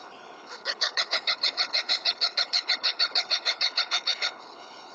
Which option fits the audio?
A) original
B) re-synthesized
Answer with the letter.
B